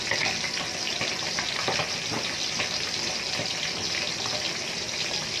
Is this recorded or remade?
recorded